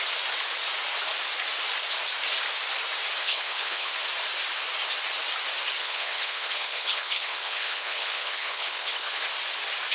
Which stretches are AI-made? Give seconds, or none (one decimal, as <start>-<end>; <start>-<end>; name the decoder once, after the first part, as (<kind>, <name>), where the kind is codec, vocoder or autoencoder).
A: 3.2-3.9 (codec, HILCodec); 5.8-9.2